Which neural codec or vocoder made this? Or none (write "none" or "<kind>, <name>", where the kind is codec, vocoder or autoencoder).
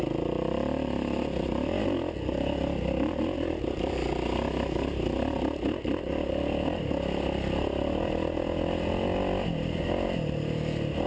none